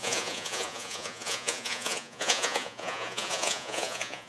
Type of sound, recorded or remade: remade